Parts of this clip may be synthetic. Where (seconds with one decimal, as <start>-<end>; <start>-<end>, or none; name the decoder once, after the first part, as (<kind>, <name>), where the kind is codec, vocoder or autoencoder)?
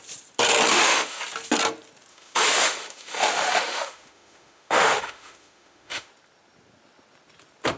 0.7-1.2 (autoencoder, DAC-VAE); 2.1-6.1